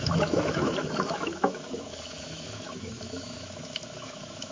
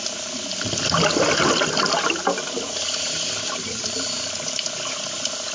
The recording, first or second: second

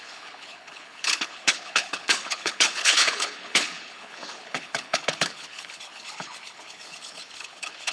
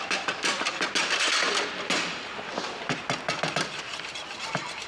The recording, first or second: second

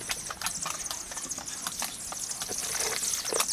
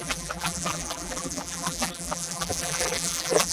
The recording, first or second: first